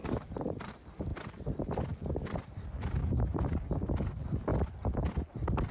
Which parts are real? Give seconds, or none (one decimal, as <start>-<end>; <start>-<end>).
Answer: 0.7-3.0; 4.0-5.7